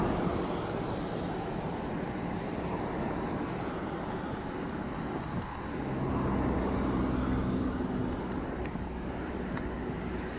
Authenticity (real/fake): real